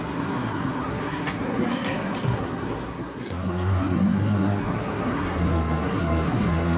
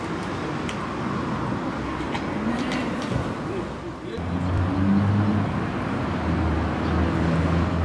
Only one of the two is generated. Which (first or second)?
first